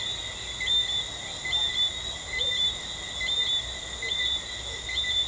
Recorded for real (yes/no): yes